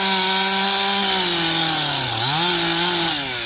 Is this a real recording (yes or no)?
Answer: yes